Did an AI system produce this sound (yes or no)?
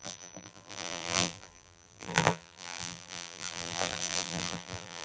yes